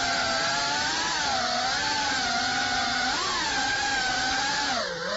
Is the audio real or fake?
real